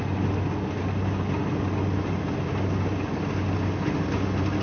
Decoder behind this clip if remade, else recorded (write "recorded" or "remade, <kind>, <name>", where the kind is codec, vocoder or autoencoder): recorded